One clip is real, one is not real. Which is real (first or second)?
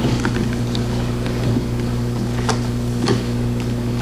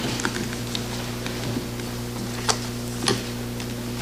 second